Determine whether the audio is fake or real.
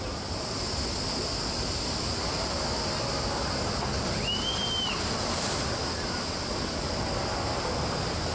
real